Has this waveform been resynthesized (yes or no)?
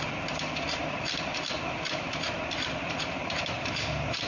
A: yes